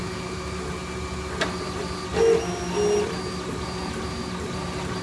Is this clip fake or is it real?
real